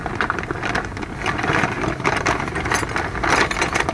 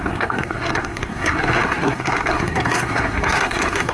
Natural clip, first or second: first